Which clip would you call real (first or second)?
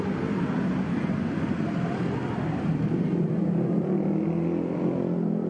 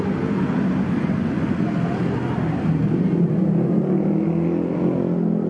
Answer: second